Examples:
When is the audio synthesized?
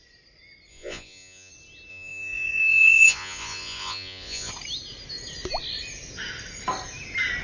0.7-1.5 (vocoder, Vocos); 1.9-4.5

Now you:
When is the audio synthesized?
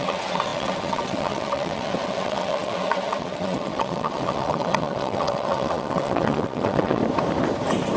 0.0-7.0 (vocoder, WaveNeXt)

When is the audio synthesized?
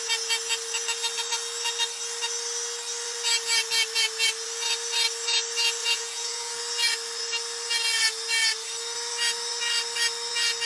5.8-6.6 (vocoder, Vocos)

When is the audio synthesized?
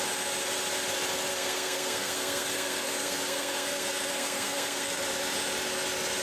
1.3-5.0 (codec, SNAC)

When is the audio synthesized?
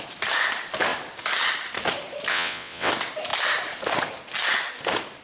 2.3-2.9 (vocoder, WaveNeXt)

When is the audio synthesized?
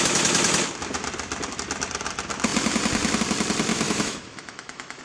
3.7-5.0 (autoencoder, DAC-VAE)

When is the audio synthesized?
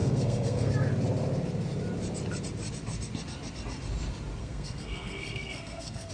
0.0-0.7 (codec, SNAC); 4.4-6.1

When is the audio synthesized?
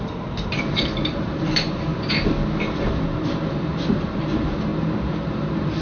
0.0-1.9 (vocoder, BigVGAN v2); 3.5-4.7; 5.3-5.8